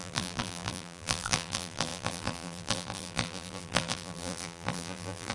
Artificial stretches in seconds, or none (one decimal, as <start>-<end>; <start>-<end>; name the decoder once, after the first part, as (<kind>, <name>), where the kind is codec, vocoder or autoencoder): 0.0-5.3 (vocoder, BigVGAN v2)